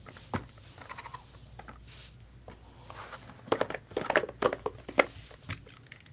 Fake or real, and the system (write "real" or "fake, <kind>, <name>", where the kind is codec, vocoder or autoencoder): real